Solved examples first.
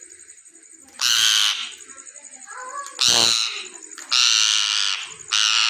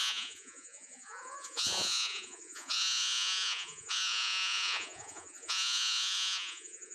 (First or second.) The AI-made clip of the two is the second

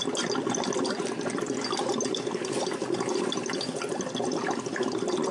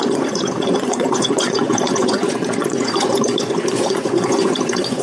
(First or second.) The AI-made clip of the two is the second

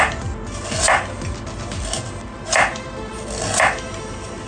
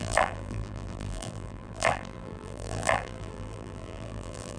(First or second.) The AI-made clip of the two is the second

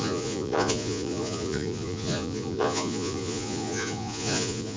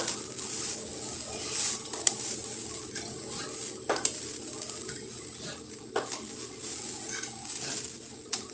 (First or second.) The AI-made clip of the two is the first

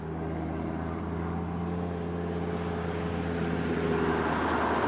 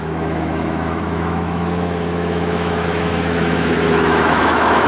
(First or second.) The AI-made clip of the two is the second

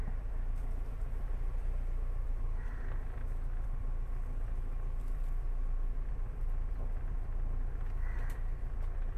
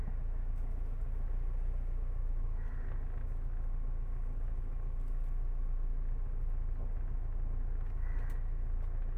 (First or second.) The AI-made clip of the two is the first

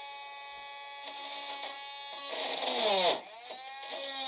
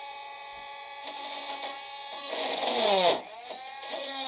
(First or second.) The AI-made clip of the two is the second